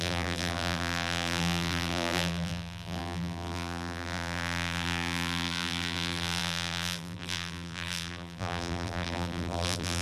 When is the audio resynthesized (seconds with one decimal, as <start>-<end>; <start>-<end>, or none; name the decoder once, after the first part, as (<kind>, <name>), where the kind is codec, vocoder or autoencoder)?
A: 0.0-10.0 (vocoder, BigVGAN v2)